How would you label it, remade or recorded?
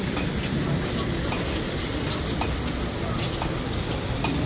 recorded